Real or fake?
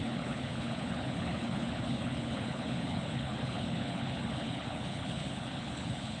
fake